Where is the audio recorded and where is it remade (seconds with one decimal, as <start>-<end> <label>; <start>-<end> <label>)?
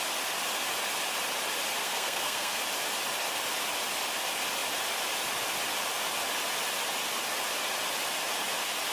0.0-1.8 recorded; 1.8-2.6 remade; 2.6-8.9 recorded